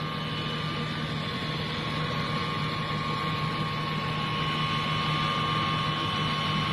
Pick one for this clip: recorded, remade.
recorded